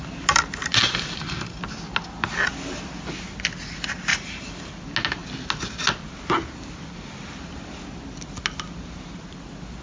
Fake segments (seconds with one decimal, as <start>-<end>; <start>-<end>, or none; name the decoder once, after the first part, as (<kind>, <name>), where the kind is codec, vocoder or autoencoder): 0.8-1.6 (vocoder, BigVGAN v2); 4.1-4.7